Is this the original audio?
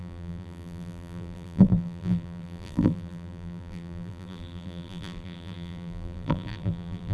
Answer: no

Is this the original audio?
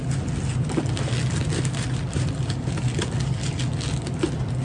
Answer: yes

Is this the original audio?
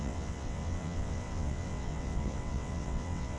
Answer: no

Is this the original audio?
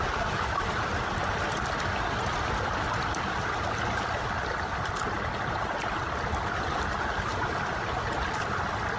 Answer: yes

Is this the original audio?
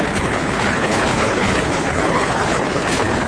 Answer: no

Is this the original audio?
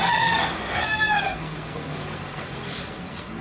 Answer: no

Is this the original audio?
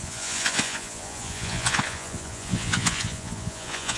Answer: no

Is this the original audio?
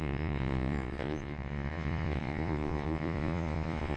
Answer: no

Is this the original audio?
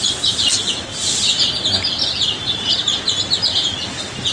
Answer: yes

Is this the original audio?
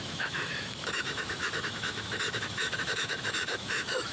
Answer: no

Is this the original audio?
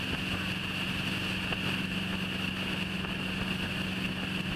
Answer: yes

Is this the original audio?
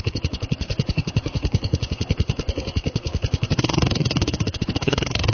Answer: no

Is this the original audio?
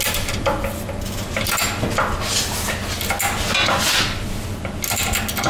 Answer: yes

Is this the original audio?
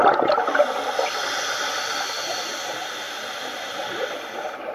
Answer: yes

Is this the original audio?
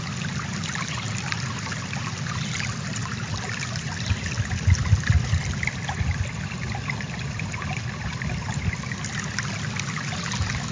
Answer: yes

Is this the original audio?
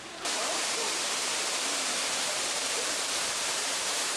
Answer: no